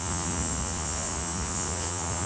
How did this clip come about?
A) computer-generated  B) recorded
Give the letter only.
A